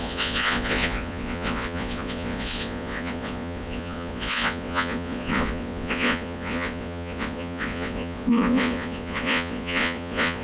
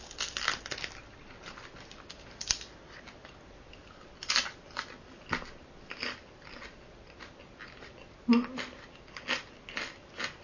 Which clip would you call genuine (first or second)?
second